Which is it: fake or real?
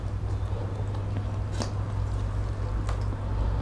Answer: real